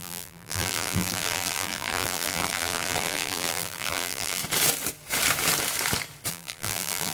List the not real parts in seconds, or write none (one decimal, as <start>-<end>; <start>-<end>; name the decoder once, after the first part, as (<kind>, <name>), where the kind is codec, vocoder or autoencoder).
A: 0.0-4.4 (vocoder, BigVGAN v2); 6.3-7.1